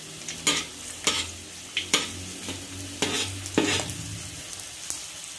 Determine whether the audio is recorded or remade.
recorded